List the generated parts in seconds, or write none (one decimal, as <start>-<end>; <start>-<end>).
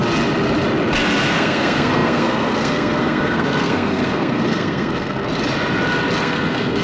1.3-5.3; 6.2-6.8